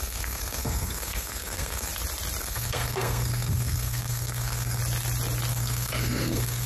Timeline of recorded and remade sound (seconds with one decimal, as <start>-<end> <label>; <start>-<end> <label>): 0.0-1.9 remade; 1.9-2.4 recorded; 2.4-4.8 remade; 4.8-5.5 recorded; 5.5-6.7 remade